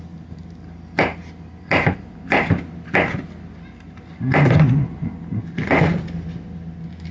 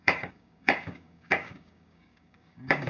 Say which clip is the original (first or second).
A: first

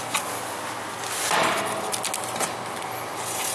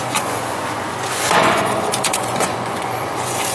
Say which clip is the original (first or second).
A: first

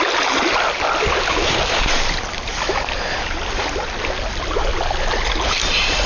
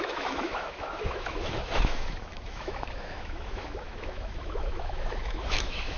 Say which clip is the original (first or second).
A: first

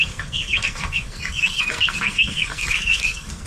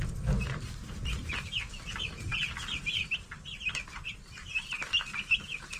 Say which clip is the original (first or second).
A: second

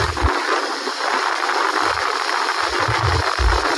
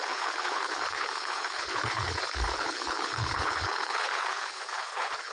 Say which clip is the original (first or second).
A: first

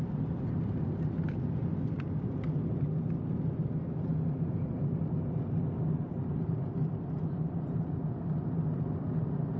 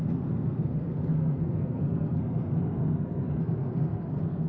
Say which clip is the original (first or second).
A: first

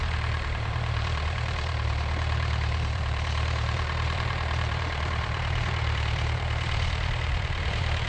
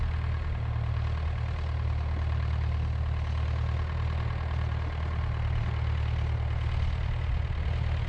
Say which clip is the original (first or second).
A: second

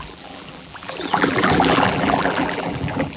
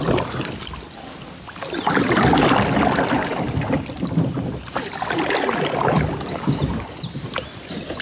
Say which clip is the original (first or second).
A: second